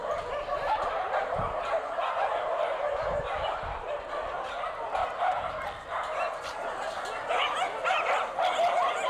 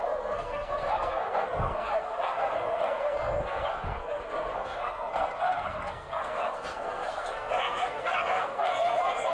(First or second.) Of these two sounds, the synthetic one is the second